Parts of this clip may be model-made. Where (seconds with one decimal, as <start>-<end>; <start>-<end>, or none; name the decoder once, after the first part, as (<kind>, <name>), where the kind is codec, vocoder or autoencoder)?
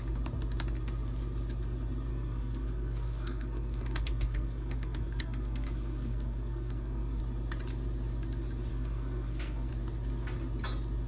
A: 2.1-7.2 (codec, SNAC); 8.7-9.7